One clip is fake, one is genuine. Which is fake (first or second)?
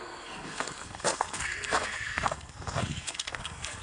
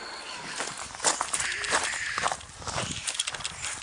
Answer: first